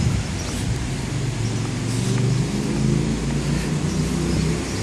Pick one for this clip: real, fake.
real